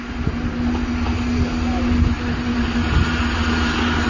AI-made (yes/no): no